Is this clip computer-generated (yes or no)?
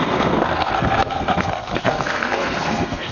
yes